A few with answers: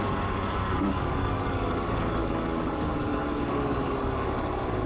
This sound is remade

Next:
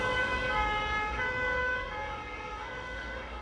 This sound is remade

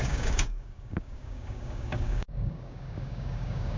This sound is remade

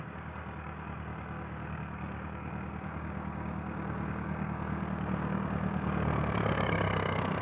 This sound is remade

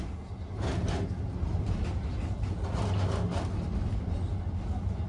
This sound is recorded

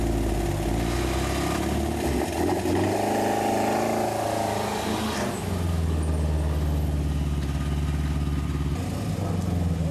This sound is recorded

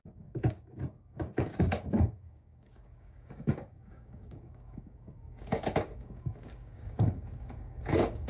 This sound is remade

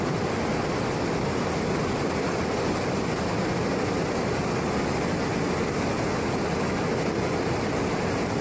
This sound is recorded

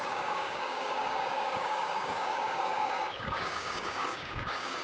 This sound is remade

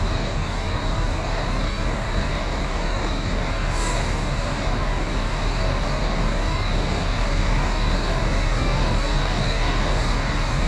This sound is remade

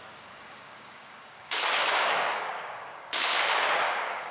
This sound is remade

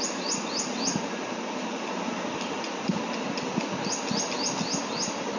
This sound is recorded